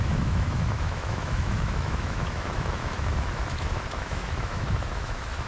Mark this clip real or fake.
fake